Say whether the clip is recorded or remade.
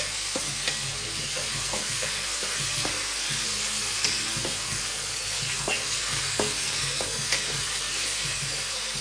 remade